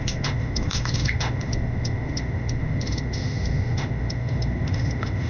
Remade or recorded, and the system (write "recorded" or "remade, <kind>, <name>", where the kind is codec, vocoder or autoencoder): remade, autoencoder, DAC-VAE